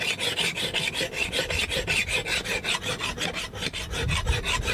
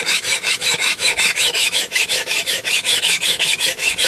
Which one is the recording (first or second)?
first